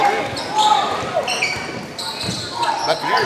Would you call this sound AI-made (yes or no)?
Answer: no